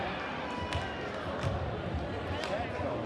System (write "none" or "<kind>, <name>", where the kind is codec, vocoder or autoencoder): none